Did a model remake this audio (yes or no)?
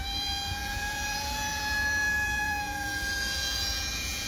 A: yes